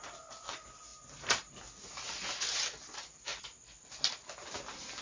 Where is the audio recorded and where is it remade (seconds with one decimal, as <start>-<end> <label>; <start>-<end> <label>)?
0.0-5.0 recorded